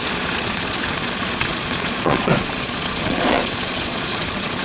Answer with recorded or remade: remade